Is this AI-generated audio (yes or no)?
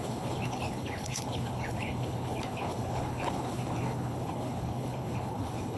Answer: yes